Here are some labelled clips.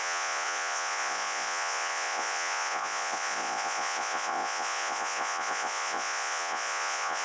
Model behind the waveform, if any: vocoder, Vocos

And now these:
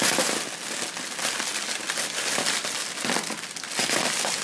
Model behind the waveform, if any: none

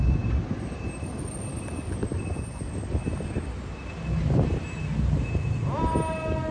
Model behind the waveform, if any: none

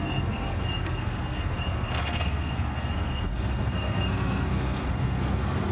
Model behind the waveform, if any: codec, SNAC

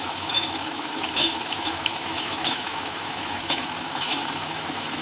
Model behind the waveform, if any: autoencoder, DAC-VAE